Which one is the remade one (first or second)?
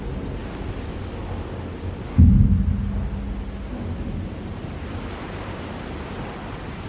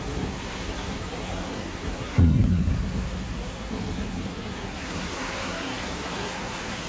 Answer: second